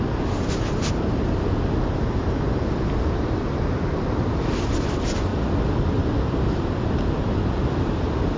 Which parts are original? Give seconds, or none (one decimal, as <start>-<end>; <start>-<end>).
0.0-8.4